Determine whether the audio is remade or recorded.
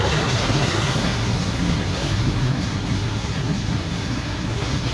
remade